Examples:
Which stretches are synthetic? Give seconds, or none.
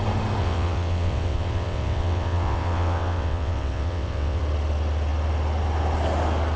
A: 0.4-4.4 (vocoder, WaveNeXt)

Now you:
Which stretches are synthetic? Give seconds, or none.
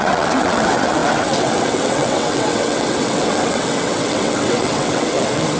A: 0.0-5.6 (vocoder, WaveNeXt)